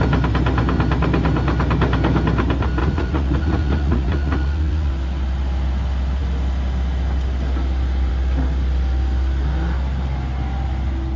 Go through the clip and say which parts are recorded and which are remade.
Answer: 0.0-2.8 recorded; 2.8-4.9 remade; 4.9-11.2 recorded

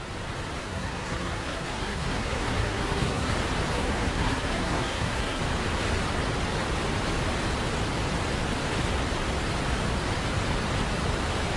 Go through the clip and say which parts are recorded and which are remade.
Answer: 0.0-0.6 recorded; 0.6-3.3 remade; 3.3-3.7 recorded; 3.7-5.4 remade; 5.4-11.6 recorded

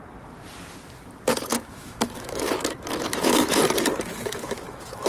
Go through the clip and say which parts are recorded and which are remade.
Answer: 0.0-1.5 recorded; 1.5-3.6 remade; 3.6-4.1 recorded; 4.1-5.1 remade